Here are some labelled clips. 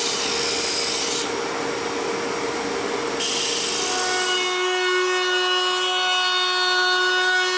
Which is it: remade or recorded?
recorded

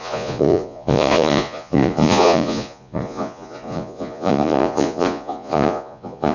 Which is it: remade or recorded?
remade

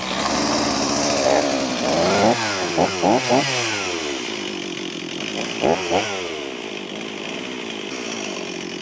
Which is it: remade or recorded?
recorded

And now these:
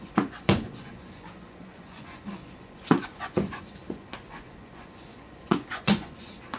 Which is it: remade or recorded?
remade